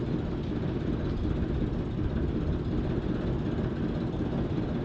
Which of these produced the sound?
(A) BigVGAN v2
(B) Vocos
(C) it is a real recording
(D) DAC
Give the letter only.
C